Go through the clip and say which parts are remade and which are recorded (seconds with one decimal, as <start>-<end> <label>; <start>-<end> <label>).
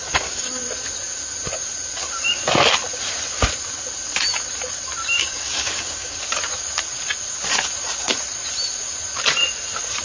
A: 0.0-0.6 remade; 0.6-5.2 recorded; 5.2-6.2 remade; 6.2-10.0 recorded